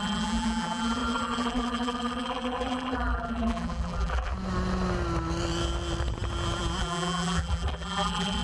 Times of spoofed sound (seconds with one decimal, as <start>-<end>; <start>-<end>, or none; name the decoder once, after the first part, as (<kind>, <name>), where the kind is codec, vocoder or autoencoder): 0.0-4.3 (vocoder, BigVGAN v2); 6.8-8.4